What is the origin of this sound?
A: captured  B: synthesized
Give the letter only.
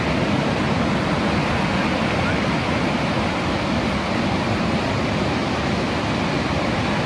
A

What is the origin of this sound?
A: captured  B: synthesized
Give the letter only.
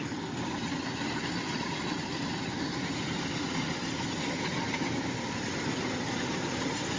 A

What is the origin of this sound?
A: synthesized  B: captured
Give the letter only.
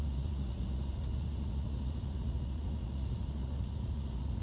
A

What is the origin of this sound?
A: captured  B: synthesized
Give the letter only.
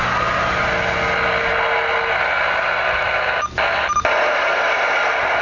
A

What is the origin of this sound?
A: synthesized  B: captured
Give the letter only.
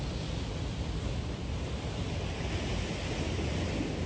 B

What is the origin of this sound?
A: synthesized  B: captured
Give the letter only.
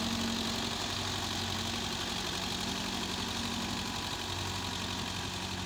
B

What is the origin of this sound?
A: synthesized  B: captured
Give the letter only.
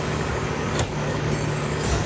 A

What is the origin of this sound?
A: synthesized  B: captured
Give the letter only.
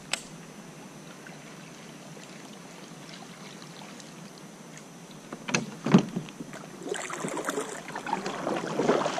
B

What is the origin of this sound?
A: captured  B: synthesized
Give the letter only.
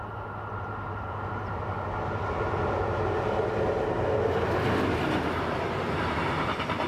A